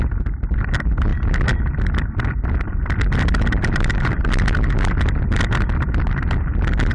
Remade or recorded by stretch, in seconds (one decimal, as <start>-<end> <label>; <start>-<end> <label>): 0.0-6.9 recorded